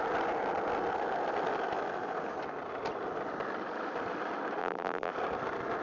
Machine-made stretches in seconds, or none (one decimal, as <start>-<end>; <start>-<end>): 4.6-5.1